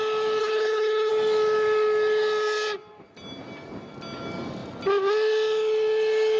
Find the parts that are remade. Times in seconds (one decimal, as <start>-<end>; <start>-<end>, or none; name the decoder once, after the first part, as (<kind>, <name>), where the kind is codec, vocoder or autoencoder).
0.4-1.1 (codec, HILCodec)